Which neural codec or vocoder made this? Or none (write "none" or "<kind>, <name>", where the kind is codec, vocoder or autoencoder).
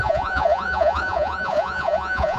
vocoder, Vocos